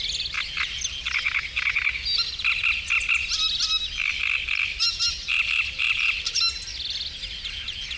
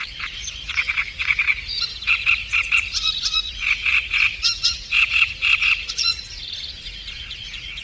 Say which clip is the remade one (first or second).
second